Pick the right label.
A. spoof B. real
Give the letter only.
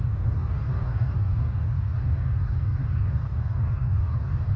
A